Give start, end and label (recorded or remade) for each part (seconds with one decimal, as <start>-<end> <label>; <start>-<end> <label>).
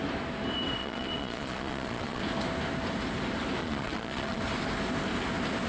0.0-0.8 recorded; 0.8-2.2 remade; 2.2-3.6 recorded; 3.6-4.4 remade; 4.4-5.7 recorded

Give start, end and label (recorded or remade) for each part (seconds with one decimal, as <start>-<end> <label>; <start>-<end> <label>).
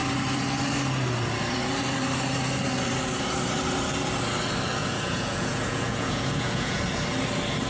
0.0-4.8 recorded; 4.8-6.8 remade; 6.8-7.7 recorded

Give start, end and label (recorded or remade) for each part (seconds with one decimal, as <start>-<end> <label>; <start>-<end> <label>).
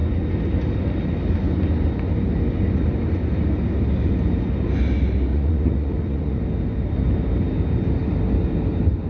0.0-5.3 recorded; 5.3-6.4 remade; 6.4-9.1 recorded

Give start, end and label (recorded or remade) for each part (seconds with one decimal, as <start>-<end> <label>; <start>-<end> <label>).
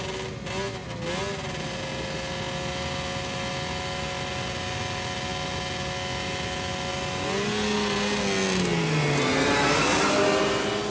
0.0-10.9 recorded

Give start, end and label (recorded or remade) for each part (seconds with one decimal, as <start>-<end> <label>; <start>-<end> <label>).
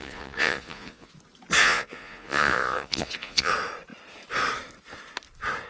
0.0-1.1 remade; 1.1-1.6 recorded; 1.6-3.5 remade; 3.5-5.7 recorded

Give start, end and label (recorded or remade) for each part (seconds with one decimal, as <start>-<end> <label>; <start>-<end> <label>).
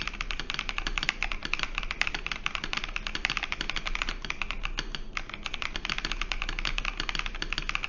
0.0-7.9 recorded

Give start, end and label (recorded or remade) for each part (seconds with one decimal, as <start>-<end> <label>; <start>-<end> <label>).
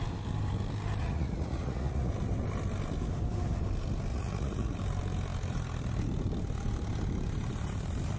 0.0-1.0 recorded; 1.0-2.1 remade; 2.1-4.1 recorded; 4.1-4.8 remade; 4.8-8.2 recorded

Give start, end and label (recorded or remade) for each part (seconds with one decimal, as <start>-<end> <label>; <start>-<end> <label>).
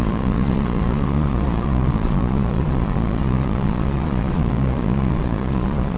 0.0-6.0 remade